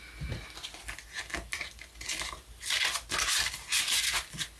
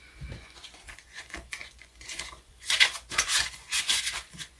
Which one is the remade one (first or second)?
second